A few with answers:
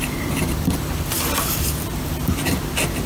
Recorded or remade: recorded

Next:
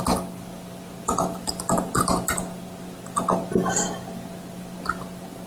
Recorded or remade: recorded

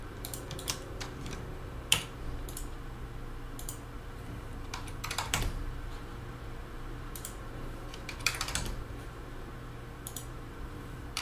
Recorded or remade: remade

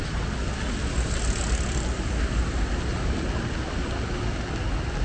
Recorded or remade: recorded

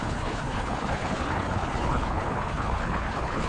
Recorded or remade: remade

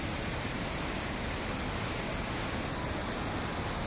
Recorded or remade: recorded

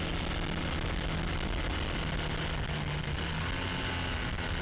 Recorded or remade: recorded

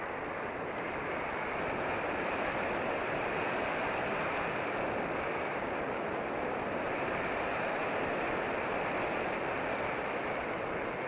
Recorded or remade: recorded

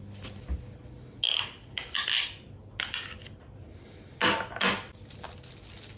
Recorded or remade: recorded